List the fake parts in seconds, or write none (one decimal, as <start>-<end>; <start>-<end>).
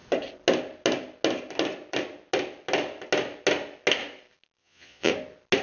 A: 4.6-5.1